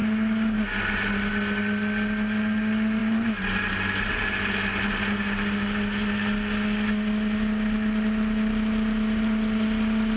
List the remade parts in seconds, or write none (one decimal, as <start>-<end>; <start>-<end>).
none